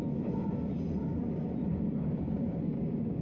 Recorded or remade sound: remade